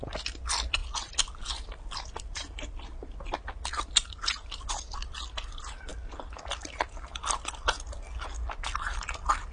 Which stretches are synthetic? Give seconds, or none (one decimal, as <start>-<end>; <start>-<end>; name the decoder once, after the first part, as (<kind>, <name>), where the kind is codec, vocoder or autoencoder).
none

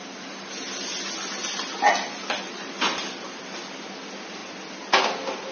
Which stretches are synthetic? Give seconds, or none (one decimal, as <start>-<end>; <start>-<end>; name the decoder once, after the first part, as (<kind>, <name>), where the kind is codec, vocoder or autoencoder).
none

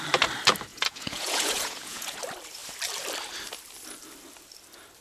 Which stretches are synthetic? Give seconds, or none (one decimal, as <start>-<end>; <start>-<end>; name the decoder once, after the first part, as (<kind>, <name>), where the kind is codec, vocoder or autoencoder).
0.7-2.2 (vocoder, Vocos)

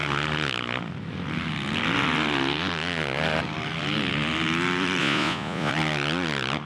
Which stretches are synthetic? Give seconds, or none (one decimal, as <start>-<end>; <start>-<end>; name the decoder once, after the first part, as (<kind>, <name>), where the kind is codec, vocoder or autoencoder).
5.0-5.7 (vocoder, Vocos)

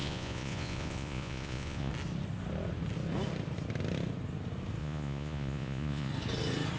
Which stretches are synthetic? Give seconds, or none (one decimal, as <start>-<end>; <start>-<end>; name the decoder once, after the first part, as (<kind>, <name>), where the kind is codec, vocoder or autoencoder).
0.0-1.9 (vocoder, Vocos); 4.8-6.1